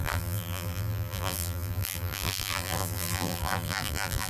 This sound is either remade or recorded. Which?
remade